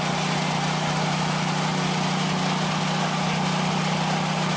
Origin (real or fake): real